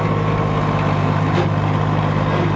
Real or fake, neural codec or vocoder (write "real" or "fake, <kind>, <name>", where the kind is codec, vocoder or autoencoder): real